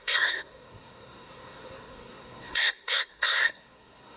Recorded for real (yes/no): no